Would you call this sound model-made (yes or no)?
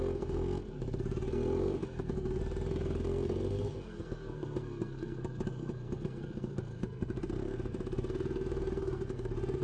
yes